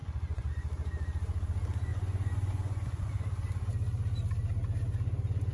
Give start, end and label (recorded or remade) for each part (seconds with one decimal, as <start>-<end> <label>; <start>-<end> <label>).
0.0-0.5 remade; 0.5-1.9 recorded; 1.9-3.1 remade; 3.1-5.5 recorded